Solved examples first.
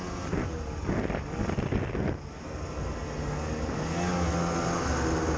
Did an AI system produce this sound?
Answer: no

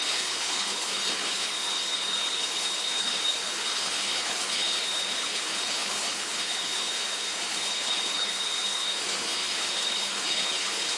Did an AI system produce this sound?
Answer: yes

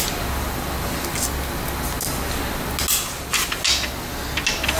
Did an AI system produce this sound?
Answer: no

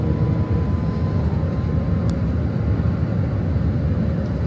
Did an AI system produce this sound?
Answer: no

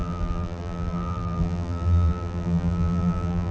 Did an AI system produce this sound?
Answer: yes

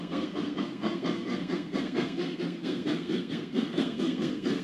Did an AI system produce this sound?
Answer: yes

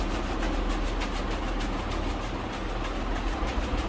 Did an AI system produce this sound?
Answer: no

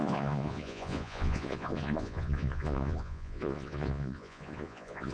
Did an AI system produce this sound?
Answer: yes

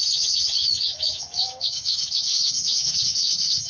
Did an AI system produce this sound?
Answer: yes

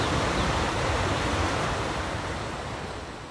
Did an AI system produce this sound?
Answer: yes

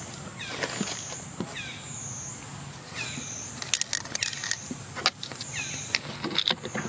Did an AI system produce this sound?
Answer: no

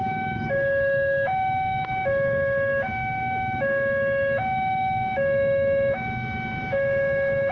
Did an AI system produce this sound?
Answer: yes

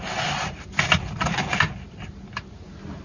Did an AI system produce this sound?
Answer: no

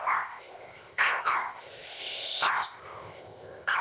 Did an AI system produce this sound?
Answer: yes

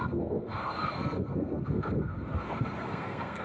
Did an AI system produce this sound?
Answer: yes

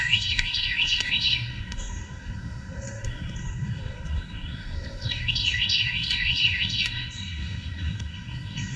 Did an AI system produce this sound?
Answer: yes